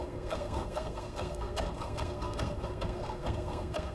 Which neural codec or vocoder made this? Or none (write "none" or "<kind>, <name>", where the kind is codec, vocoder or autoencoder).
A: codec, SNAC